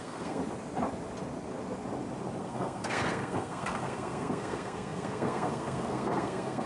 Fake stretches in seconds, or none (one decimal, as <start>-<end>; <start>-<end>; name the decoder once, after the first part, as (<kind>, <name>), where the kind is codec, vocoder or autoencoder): 0.0-0.4 (codec, SNAC); 2.4-6.7